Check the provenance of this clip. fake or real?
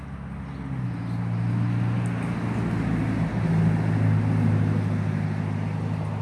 real